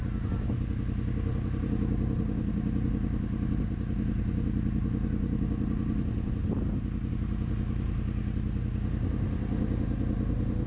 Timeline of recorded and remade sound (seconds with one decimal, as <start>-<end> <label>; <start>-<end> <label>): 0.0-10.7 recorded